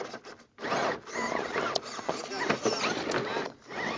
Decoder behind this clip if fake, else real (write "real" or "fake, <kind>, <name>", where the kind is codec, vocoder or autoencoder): real